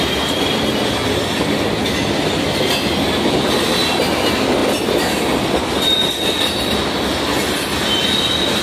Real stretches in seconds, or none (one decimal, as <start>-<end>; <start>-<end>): 0.0-8.6